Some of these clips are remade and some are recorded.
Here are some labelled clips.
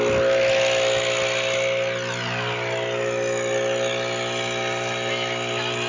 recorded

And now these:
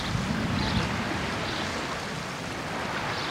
recorded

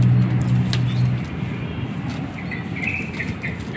recorded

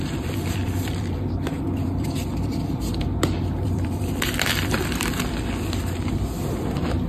remade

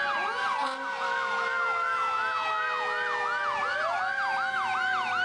recorded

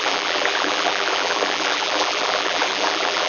remade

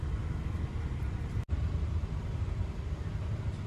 remade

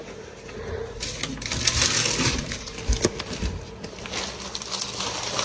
recorded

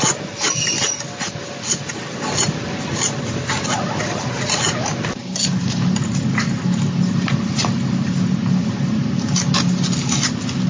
recorded